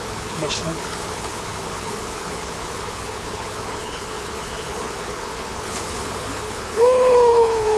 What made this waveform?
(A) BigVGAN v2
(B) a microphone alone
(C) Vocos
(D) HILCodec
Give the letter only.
D